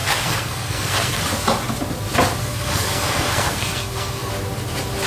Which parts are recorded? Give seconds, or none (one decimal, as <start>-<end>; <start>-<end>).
1.2-2.4; 4.3-5.1